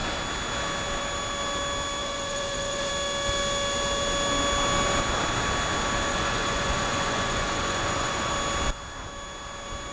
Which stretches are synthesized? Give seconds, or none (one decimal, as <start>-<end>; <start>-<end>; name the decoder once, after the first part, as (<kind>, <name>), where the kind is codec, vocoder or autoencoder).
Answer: 2.0-2.9 (vocoder, Vocos); 6.1-8.3